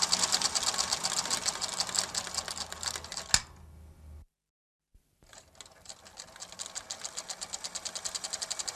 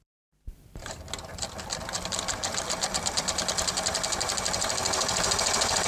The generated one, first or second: second